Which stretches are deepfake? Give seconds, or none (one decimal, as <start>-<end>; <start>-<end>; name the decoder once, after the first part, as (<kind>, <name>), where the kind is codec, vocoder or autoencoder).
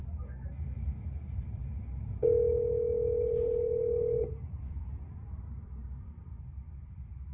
1.0-1.6 (vocoder, BigVGAN v2); 3.2-7.3